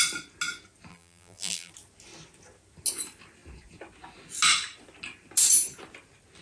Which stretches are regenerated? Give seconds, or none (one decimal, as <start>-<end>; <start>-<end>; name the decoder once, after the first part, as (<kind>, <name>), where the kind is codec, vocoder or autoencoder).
0.9-1.7 (vocoder, BigVGAN v2)